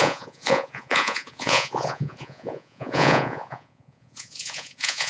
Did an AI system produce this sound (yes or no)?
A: yes